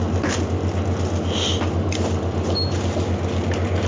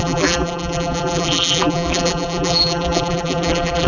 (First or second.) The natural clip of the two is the first